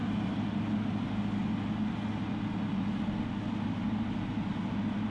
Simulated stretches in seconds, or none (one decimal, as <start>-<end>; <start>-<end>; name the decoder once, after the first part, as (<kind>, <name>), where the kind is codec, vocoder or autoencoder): none